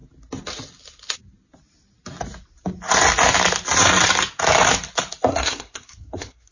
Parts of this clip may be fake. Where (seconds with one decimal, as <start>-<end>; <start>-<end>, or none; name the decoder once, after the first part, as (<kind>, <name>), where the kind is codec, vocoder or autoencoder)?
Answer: 5.3-6.5 (codec, SNAC)